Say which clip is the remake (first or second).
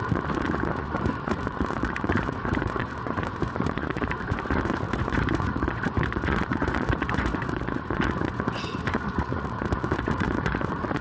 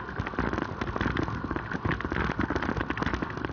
first